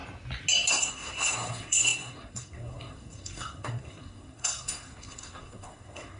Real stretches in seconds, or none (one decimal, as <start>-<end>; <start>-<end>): 0.0-0.7